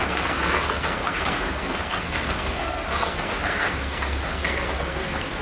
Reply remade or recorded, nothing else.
remade